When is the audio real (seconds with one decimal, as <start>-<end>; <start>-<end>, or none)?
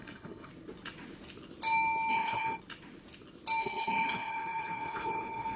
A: 0.5-2.1; 2.6-3.6